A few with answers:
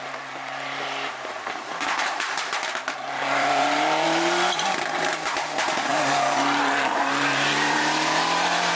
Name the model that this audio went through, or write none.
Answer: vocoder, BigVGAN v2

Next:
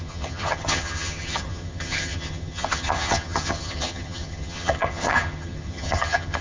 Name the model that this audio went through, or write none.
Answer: vocoder, HiFi-GAN